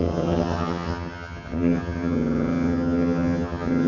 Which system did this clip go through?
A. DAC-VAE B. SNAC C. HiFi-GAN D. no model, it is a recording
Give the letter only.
C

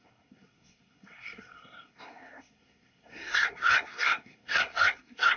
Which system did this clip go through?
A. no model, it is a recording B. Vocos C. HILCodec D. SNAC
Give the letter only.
D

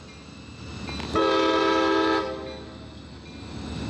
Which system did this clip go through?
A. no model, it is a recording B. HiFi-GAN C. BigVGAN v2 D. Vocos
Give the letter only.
A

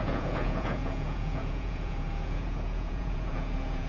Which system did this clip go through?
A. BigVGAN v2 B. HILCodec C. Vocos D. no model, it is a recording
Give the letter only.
C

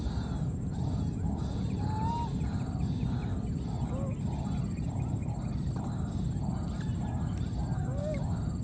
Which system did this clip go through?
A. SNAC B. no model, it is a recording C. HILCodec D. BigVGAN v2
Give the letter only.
B